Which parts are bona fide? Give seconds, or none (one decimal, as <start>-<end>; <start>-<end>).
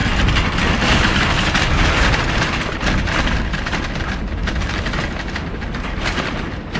0.0-6.8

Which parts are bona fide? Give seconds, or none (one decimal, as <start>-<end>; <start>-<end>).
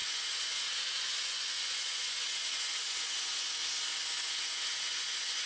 3.6-4.2